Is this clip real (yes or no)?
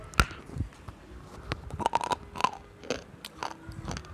yes